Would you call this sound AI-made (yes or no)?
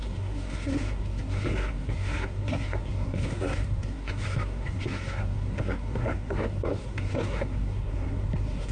yes